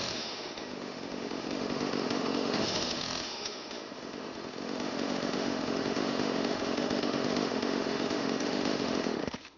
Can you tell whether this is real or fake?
fake